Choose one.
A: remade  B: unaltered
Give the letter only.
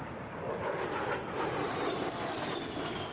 B